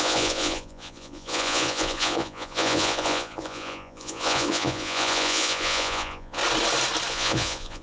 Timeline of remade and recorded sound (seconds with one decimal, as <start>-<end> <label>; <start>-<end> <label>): 0.0-6.4 remade; 6.4-7.1 recorded; 7.1-7.8 remade